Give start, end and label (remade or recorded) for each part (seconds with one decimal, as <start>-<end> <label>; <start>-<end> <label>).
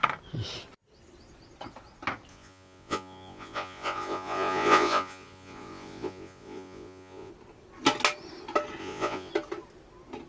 0.0-2.3 recorded; 2.3-7.3 remade; 7.3-8.8 recorded; 8.8-9.3 remade; 9.3-10.3 recorded